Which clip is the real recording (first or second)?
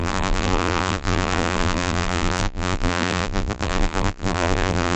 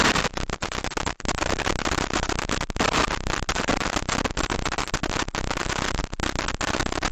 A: second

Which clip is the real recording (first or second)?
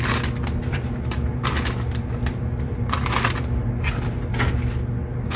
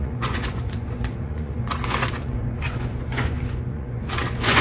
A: first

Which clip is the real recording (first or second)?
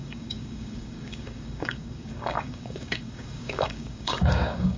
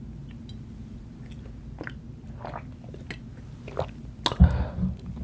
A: second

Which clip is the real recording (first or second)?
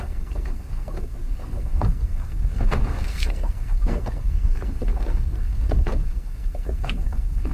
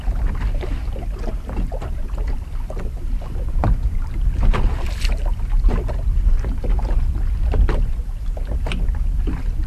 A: second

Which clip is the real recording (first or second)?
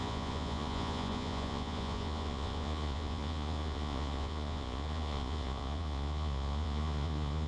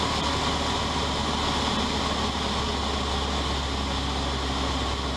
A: second